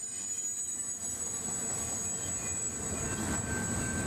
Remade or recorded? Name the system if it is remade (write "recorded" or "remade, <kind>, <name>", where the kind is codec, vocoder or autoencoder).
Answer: recorded